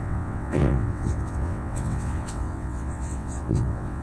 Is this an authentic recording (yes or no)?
no